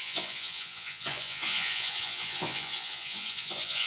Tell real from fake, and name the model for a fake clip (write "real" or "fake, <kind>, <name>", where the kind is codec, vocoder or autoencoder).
fake, vocoder, Vocos